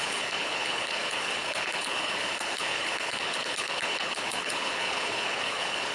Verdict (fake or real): fake